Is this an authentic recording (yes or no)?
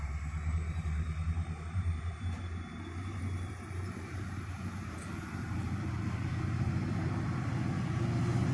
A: no